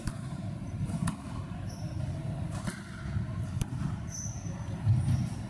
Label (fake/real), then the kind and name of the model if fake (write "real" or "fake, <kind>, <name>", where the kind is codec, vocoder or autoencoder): fake, vocoder, BigVGAN v2